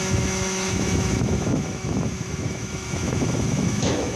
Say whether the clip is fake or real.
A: fake